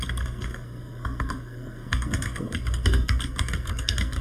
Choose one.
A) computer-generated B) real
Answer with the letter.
A